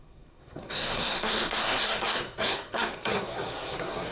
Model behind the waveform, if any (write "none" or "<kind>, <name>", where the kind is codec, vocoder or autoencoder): codec, SNAC